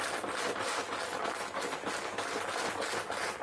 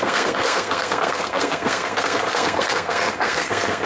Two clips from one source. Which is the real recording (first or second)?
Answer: first